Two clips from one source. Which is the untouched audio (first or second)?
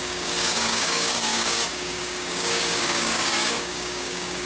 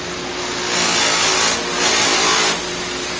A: second